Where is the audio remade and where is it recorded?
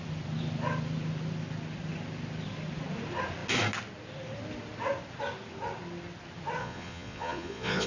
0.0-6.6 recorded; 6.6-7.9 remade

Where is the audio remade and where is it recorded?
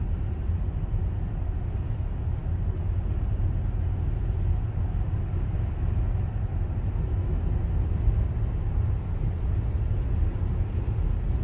0.0-11.4 recorded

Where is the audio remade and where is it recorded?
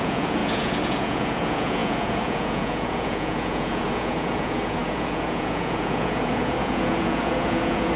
0.0-8.0 remade